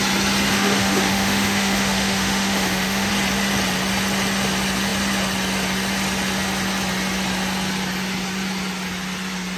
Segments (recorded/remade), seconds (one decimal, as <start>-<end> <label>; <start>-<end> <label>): 0.0-0.5 recorded; 0.5-3.1 remade; 3.1-9.6 recorded